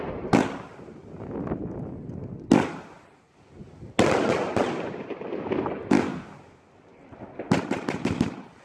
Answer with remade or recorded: recorded